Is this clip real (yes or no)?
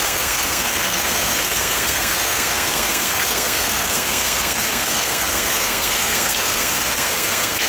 no